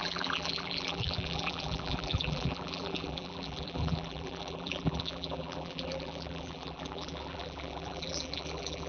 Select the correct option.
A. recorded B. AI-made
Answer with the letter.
B